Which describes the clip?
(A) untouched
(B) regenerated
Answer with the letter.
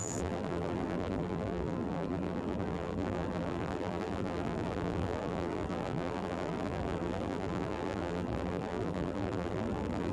B